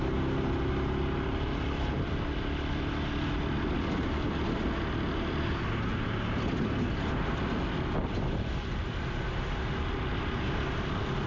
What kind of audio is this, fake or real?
real